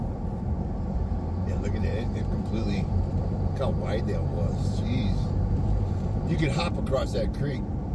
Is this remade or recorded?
remade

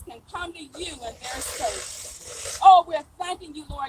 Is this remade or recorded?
recorded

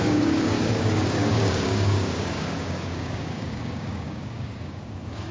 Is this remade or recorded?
remade